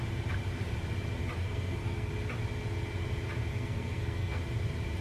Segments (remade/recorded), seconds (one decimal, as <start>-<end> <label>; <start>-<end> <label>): 0.0-1.4 recorded; 1.4-2.1 remade; 2.1-3.5 recorded; 3.5-4.4 remade; 4.4-5.0 recorded